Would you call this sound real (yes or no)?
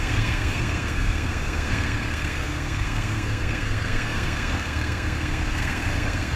no